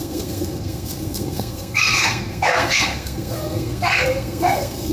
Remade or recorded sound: remade